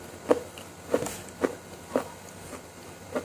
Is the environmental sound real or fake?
real